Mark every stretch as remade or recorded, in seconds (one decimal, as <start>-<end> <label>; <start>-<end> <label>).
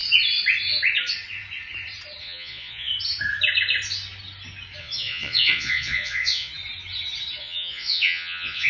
0.0-2.2 recorded; 2.2-2.9 remade; 2.9-4.8 recorded; 4.8-6.5 remade; 6.5-7.4 recorded; 7.4-8.7 remade